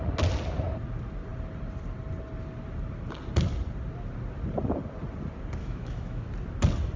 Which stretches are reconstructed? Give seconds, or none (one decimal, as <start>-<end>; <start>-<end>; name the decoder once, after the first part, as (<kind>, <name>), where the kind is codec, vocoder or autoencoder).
5.6-6.3 (autoencoder, DAC-VAE)

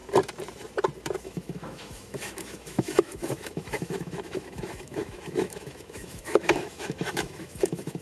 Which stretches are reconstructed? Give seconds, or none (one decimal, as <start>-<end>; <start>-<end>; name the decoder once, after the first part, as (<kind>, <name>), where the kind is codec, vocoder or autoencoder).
1.2-8.0 (autoencoder, DAC-VAE)

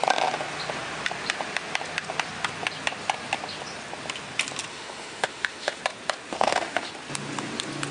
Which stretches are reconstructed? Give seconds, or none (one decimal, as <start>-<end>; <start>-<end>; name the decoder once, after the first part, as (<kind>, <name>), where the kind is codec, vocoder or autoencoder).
4.7-5.8 (autoencoder, DAC-VAE); 6.3-6.9

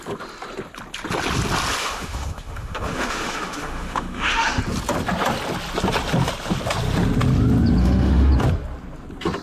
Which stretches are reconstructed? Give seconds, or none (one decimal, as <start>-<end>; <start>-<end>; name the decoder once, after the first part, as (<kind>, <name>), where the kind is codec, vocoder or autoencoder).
1.8-4.6 (autoencoder, DAC-VAE); 7.8-8.3

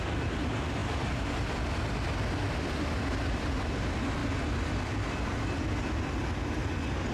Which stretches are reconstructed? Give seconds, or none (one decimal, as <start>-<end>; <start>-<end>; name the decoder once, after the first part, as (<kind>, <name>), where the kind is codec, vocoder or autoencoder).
none

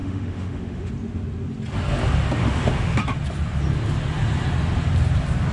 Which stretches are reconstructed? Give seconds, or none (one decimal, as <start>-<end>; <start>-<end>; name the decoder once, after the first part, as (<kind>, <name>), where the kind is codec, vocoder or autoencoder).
0.0-0.9 (autoencoder, DAC-VAE); 2.4-3.0